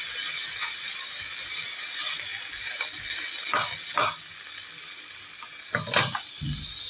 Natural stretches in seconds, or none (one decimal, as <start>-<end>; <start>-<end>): 0.0-6.9